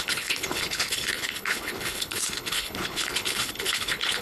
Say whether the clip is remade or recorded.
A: remade